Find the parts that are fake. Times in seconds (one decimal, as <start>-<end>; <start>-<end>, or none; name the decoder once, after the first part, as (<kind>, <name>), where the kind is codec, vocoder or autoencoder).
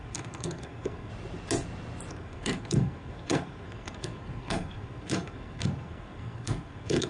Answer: 0.0-1.1 (codec, SNAC); 2.1-7.1